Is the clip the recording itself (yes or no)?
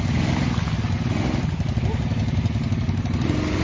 yes